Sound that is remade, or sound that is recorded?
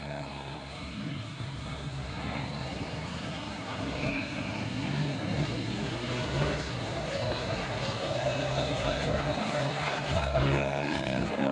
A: remade